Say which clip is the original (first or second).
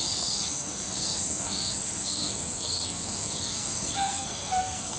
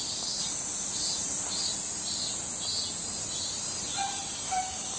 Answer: second